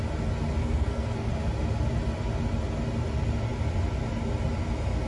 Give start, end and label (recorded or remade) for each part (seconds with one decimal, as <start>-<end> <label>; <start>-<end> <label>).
0.0-0.6 recorded; 0.6-1.3 remade; 1.3-5.1 recorded